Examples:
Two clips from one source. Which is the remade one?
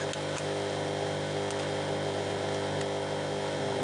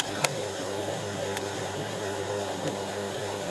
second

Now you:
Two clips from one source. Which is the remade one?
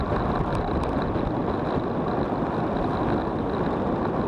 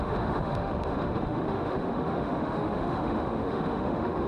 second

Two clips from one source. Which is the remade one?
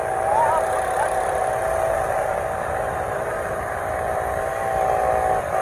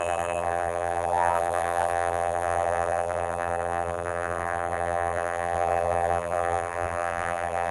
second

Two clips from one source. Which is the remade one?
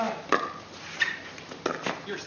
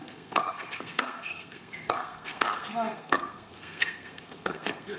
second